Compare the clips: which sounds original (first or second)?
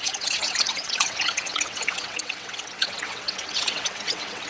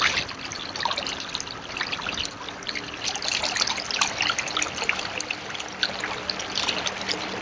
second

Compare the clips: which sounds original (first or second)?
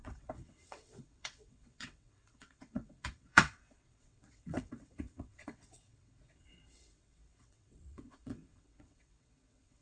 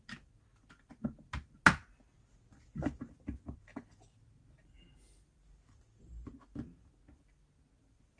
second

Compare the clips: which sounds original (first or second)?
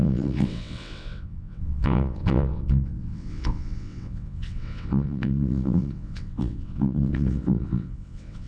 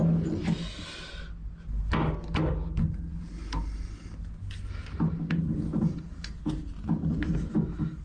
second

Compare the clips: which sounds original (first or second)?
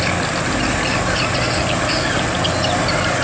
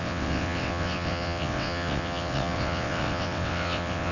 first